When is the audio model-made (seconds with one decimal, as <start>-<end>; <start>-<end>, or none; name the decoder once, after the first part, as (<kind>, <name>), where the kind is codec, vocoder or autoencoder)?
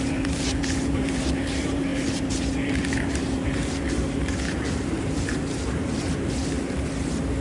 0.0-6.4 (vocoder, BigVGAN v2)